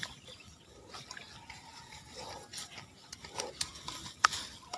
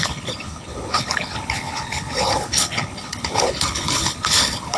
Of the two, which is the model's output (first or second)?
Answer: second